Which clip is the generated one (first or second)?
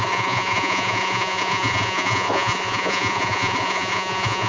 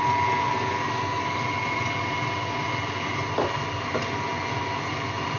first